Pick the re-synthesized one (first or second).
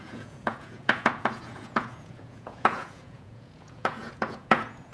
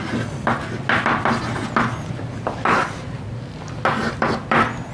first